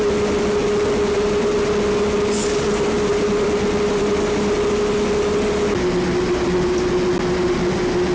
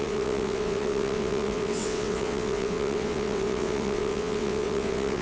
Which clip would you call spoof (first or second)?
second